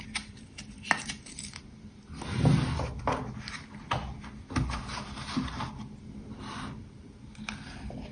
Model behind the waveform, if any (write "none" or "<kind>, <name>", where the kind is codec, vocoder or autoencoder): none